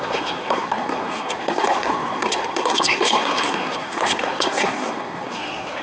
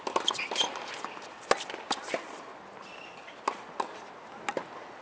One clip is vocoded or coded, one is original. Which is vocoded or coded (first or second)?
first